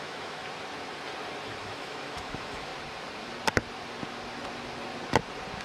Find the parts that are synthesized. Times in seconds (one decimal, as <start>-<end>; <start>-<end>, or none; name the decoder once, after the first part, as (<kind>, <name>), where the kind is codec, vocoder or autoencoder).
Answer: 0.0-0.4 (autoencoder, DAC-VAE); 1.6-2.7